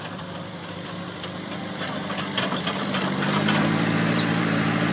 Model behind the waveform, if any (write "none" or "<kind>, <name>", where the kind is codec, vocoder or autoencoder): vocoder, BigVGAN v2